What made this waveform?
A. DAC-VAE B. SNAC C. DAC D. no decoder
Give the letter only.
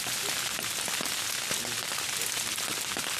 D